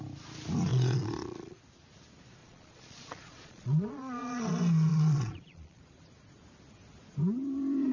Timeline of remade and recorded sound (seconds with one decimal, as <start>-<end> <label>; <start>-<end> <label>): 0.0-0.7 recorded; 0.7-1.6 remade; 1.6-2.4 recorded; 2.4-4.5 remade; 4.5-4.9 recorded; 4.9-5.8 remade; 5.8-7.9 recorded